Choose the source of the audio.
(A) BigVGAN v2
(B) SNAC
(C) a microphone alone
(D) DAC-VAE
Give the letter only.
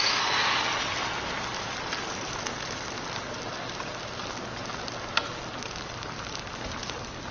C